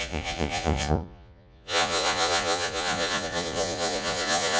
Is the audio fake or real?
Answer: fake